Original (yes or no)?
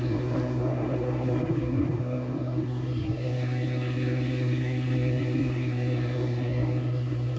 no